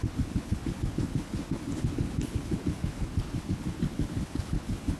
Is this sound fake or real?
fake